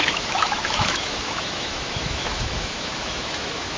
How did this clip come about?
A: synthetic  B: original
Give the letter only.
A